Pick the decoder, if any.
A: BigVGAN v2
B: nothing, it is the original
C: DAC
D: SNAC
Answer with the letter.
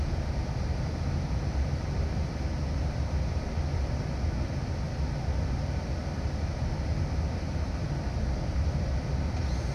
B